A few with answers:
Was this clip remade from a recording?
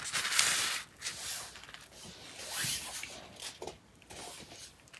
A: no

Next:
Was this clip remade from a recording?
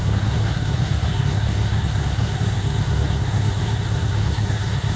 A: yes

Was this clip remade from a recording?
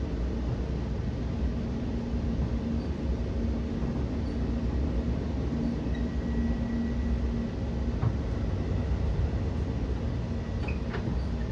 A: no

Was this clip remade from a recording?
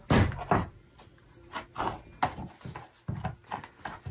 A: no